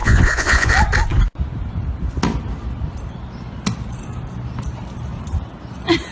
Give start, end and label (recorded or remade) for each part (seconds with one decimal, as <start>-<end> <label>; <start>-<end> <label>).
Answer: 0.0-0.7 remade; 0.7-6.1 recorded